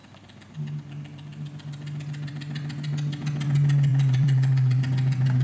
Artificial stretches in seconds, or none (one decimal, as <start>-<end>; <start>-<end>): 3.9-4.8